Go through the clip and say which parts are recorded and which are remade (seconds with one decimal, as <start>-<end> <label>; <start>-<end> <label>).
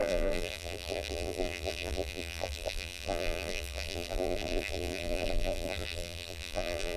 0.0-7.0 remade